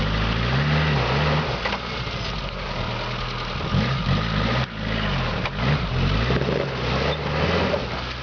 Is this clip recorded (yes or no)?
yes